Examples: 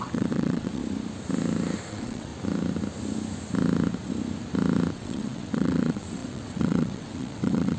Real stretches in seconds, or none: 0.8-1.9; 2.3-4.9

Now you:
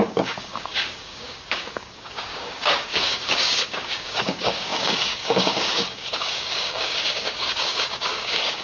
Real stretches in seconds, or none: none